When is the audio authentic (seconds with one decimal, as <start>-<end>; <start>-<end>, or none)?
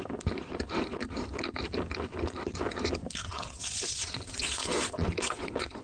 0.0-3.2